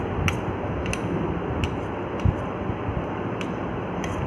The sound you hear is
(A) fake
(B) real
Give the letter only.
B